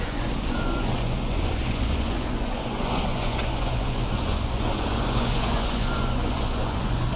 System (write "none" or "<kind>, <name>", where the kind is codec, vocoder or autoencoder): vocoder, Vocos